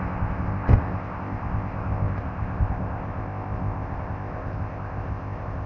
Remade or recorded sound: remade